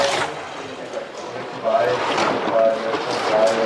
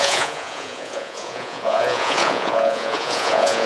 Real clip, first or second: first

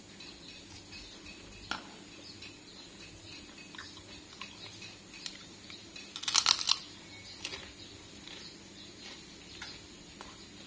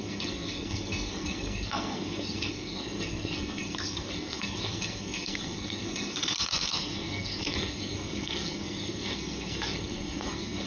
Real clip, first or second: first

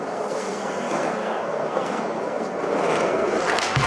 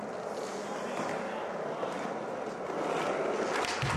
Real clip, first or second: second